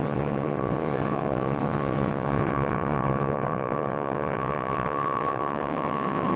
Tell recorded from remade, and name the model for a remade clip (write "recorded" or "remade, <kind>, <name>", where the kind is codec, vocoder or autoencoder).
remade, vocoder, WaveNeXt